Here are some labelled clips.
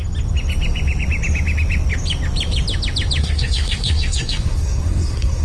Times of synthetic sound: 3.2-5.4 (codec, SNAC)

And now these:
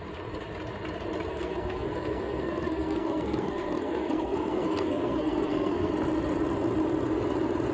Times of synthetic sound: 1.3-5.9 (codec, SNAC)

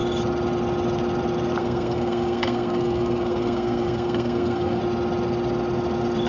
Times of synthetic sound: 1.6-4.8 (codec, SNAC)

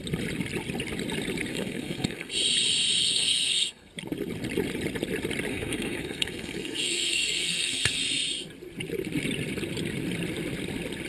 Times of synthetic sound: 1.5-2.3 (codec, SNAC); 3.0-3.9; 5.5-8.0

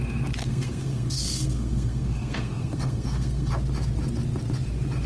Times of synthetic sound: 0.4-3.5 (codec, SNAC)

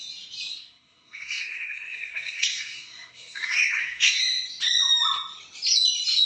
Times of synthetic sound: 0.5-4.2 (codec, SNAC)

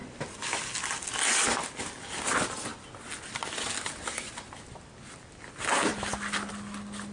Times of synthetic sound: none

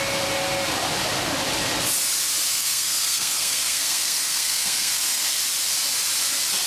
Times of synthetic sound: 2.5-5.4 (codec, SNAC)